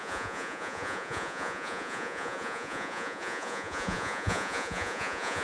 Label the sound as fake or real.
fake